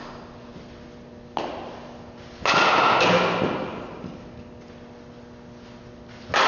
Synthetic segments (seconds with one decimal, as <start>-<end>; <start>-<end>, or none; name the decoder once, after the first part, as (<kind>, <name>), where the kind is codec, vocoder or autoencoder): none